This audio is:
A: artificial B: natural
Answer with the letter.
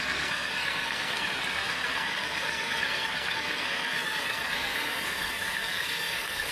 A